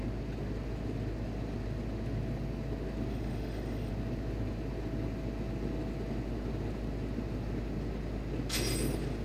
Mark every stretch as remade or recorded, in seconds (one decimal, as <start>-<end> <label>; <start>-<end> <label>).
0.0-3.1 recorded; 3.1-3.9 remade; 3.9-9.2 recorded